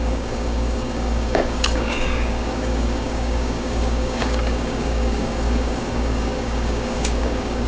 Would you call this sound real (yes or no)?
no